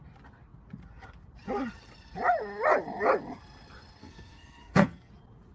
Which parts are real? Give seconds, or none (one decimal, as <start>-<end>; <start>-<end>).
0.0-4.0; 5.1-5.5